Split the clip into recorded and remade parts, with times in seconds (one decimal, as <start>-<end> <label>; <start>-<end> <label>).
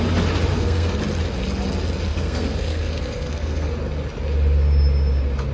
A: 0.0-0.5 recorded; 0.5-1.0 remade; 1.0-2.1 recorded; 2.1-3.7 remade; 3.7-5.5 recorded